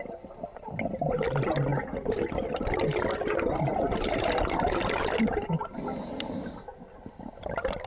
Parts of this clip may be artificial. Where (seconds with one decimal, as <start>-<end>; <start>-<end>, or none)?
none